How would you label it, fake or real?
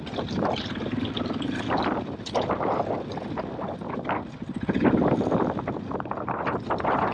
real